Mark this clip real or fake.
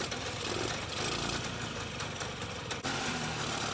real